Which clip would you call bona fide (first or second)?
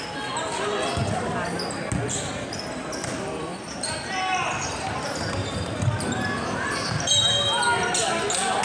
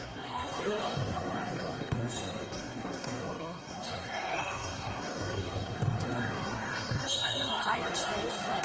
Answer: first